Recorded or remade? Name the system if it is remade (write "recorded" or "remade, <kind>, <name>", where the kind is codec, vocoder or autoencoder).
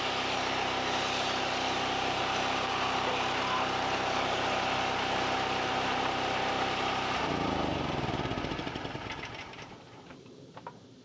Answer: remade, vocoder, BigVGAN v2